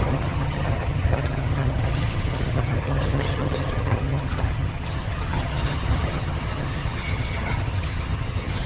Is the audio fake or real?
fake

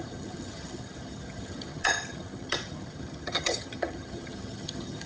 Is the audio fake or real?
fake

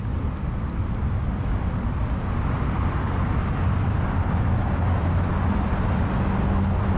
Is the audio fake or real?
real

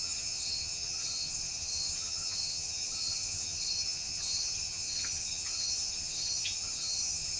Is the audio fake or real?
fake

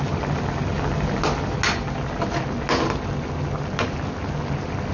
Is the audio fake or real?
real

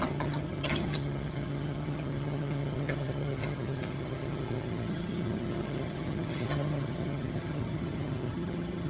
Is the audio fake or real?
fake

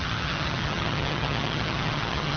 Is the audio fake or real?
fake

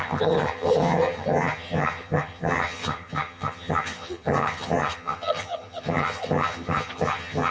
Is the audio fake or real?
fake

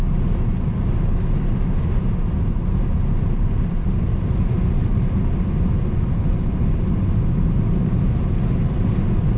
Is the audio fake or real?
real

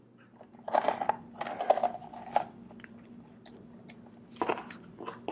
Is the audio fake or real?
real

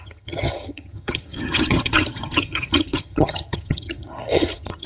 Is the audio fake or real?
fake